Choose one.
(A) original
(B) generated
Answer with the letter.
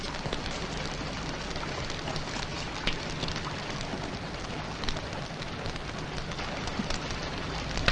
A